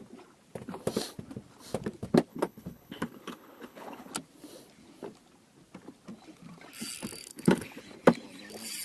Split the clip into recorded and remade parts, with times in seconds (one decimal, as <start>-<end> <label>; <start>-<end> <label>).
0.0-2.3 recorded; 2.3-4.1 remade; 4.1-7.2 recorded; 7.2-7.8 remade; 7.8-8.8 recorded